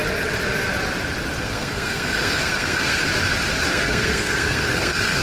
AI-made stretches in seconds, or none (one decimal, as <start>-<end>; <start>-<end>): 1.4-3.0; 3.7-5.2